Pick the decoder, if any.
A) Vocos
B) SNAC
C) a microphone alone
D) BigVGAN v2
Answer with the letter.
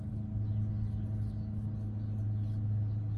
C